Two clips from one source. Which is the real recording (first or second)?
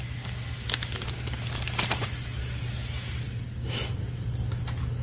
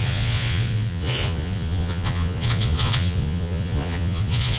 first